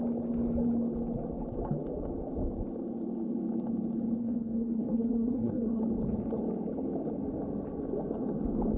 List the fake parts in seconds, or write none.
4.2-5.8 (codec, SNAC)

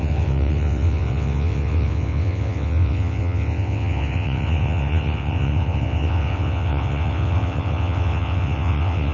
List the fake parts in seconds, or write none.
0.0-9.1 (vocoder, WaveNeXt)

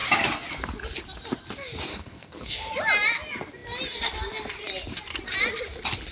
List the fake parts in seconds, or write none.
1.9-2.7 (codec, SNAC)

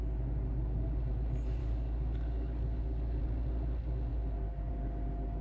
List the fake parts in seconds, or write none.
1.6-3.2 (codec, DAC)

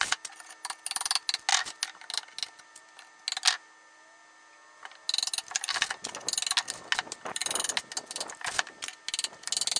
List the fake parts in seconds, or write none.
none

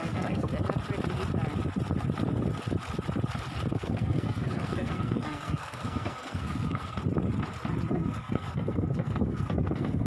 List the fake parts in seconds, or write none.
0.0-0.5 (codec, SNAC); 3.7-7.0; 7.9-10.1

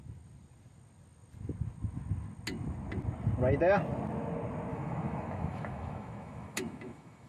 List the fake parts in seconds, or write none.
4.7-7.3 (autoencoder, DAC-VAE)